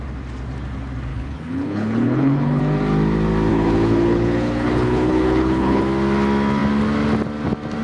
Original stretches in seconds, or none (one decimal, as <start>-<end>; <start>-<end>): 0.0-1.1; 2.6-3.5; 5.8-7.8